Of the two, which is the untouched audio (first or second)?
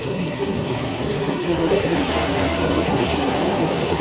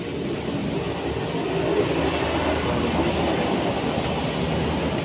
second